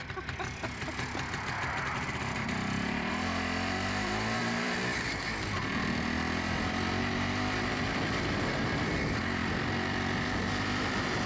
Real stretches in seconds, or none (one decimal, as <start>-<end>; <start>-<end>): none